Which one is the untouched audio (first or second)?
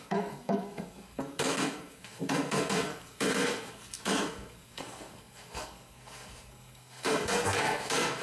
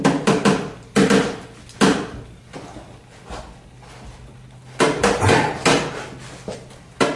second